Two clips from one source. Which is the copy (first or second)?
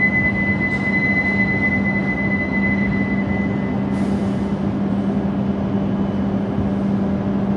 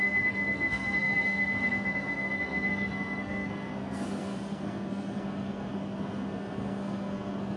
second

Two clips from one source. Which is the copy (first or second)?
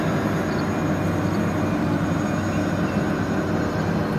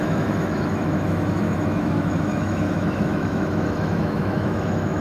second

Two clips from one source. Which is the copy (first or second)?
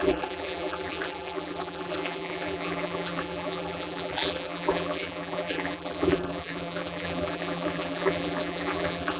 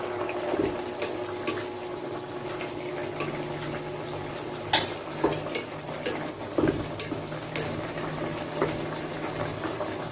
first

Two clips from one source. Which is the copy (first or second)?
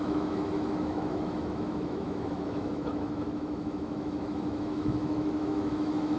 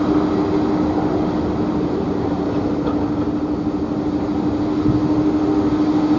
first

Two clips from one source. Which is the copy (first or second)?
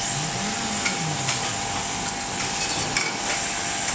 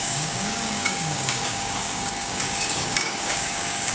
second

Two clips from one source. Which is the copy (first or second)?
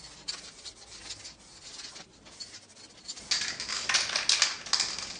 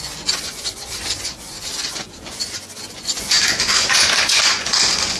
second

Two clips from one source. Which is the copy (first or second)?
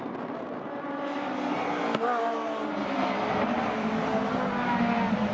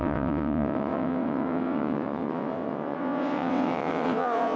second